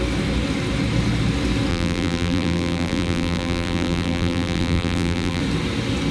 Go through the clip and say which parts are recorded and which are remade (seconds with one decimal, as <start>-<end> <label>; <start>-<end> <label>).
0.0-1.7 recorded; 1.7-5.4 remade; 5.4-6.1 recorded